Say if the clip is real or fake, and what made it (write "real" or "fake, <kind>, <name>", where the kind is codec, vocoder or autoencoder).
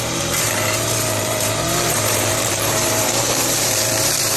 fake, vocoder, BigVGAN v2